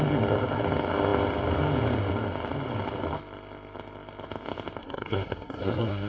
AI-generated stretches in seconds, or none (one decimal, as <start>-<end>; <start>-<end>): 4.8-6.1